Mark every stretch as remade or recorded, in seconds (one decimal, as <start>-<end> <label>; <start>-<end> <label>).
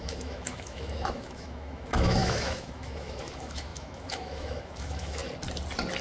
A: 0.0-5.2 remade; 5.2-6.0 recorded